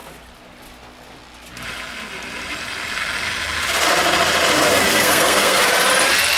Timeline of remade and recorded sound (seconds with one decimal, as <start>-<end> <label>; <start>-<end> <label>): 0.0-4.9 recorded; 4.9-5.7 remade; 5.7-6.4 recorded